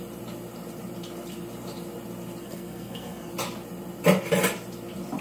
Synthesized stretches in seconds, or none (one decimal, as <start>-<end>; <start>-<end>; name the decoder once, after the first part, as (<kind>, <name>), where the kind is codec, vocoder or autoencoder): 2.4-3.3 (codec, SNAC)